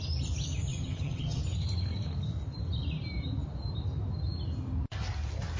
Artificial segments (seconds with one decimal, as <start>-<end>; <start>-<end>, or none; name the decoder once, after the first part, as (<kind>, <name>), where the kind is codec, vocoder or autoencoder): 0.7-1.4 (vocoder, HiFi-GAN)